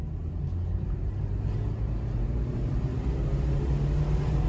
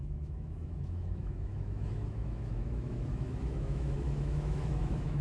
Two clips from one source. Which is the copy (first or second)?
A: second